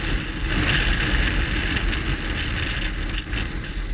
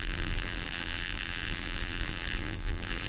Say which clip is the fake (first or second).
second